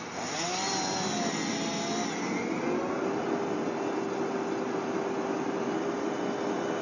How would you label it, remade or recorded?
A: recorded